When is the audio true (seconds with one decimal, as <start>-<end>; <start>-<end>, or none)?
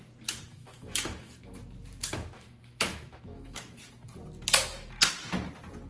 0.0-0.5; 1.6-2.0; 3.8-5.9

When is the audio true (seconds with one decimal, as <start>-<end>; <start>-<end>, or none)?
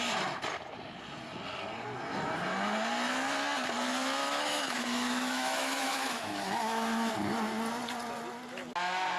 0.0-4.2; 7.1-9.2